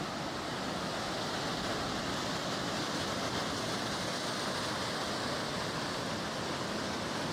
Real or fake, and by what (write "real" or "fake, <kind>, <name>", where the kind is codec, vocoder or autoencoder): real